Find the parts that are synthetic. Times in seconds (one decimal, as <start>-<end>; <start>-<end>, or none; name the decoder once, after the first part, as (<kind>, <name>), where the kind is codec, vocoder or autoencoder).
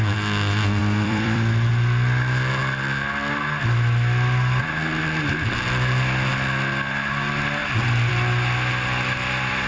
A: 0.8-1.7 (vocoder, BigVGAN v2)